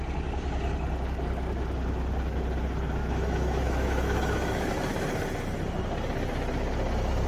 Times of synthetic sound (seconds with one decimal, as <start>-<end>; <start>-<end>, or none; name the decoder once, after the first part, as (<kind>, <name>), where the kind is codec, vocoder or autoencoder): 3.0-4.7 (autoencoder, DAC-VAE)